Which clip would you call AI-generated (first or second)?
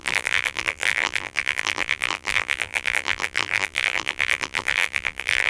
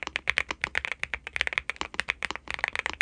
first